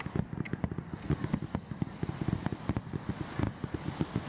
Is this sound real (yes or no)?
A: yes